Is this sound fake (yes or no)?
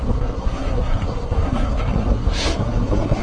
yes